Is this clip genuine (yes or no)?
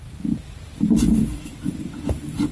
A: yes